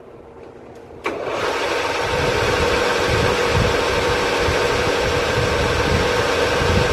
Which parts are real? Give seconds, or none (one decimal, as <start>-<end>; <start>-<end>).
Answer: 0.0-6.9

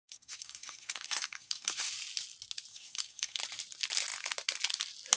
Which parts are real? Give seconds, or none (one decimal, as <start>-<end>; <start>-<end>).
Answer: 1.9-2.7; 3.4-5.2

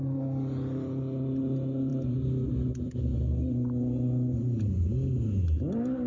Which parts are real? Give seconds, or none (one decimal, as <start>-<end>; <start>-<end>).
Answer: 0.0-6.1

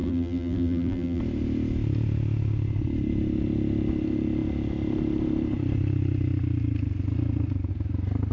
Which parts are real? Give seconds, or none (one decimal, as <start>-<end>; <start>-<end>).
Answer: 1.2-8.3